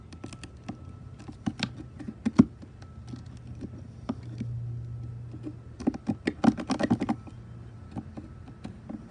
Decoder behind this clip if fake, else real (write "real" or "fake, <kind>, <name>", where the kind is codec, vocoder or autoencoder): real